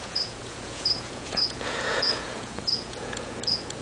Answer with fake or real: fake